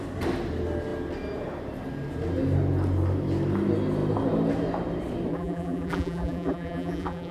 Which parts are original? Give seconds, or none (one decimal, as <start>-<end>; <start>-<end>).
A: 0.0-5.3